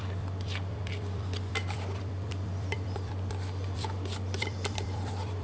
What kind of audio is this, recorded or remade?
remade